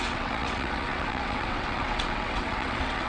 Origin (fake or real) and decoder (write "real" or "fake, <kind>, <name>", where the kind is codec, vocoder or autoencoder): fake, vocoder, WaveNeXt